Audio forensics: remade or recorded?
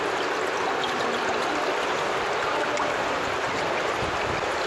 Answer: recorded